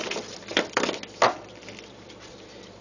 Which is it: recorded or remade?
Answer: remade